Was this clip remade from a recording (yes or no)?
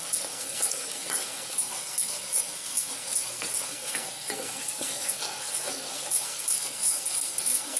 yes